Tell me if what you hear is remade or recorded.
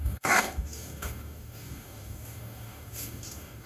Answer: remade